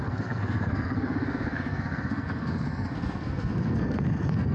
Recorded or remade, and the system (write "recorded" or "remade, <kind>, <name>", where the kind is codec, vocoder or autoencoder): remade, codec, SNAC